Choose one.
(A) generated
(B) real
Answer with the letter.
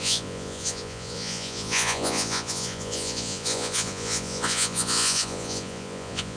A